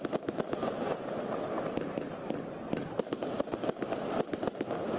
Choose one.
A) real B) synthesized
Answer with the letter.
A